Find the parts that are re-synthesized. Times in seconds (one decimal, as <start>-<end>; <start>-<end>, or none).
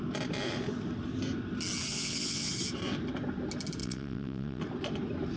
1.9-2.5; 3.8-4.6